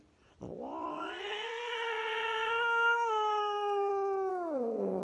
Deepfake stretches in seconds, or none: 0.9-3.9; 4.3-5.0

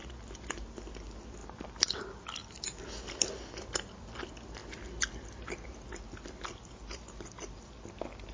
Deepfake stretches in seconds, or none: none

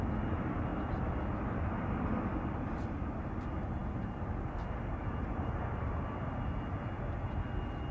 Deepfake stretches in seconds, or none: none

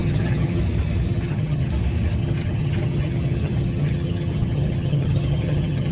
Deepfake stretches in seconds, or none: 0.0-0.6; 1.1-1.7; 2.2-5.9

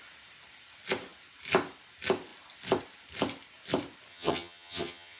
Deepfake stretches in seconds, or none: 4.1-5.2

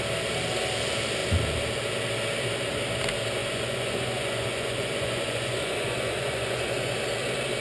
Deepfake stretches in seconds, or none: 3.4-7.0

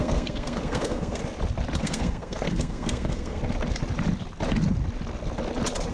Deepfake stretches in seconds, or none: 0.0-1.2; 1.8-3.4

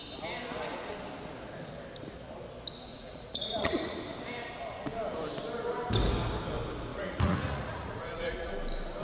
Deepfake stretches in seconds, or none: 2.9-4.0; 6.9-8.5